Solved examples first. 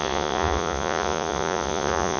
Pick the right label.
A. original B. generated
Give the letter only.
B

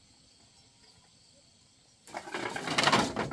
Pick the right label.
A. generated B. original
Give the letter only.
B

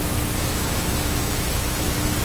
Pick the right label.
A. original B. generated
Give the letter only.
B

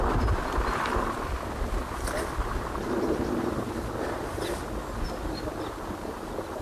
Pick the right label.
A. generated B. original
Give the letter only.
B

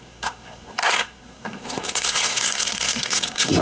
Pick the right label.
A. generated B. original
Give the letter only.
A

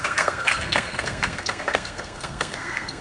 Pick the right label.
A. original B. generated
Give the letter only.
B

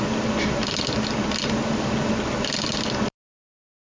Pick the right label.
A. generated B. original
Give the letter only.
B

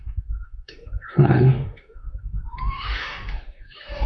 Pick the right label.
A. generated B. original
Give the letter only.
A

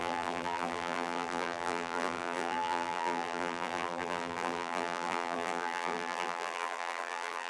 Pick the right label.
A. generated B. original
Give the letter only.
A